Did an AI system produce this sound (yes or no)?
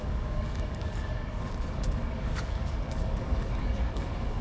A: yes